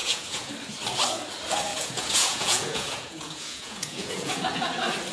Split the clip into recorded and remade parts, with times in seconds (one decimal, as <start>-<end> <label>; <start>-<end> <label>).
0.0-0.5 remade; 0.5-1.7 recorded; 1.7-4.3 remade; 4.3-5.1 recorded